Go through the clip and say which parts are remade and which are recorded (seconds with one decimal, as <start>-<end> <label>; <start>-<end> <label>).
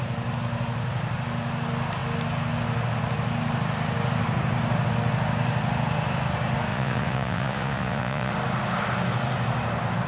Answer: 0.0-6.7 recorded; 6.7-8.3 remade; 8.3-10.1 recorded